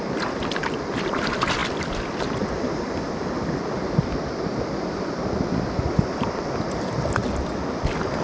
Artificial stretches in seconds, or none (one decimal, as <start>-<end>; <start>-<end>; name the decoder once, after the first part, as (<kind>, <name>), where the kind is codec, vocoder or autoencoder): none